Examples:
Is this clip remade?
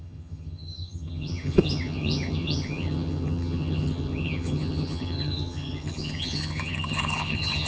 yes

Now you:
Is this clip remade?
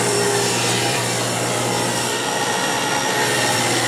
yes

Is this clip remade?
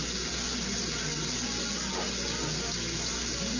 no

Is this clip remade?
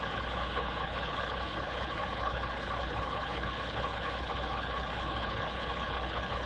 yes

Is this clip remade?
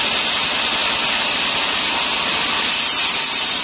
no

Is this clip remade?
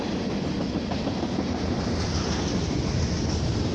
no